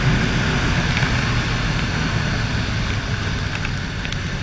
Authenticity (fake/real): real